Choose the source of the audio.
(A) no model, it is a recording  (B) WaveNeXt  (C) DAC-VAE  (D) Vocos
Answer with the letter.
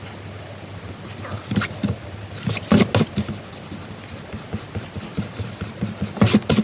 A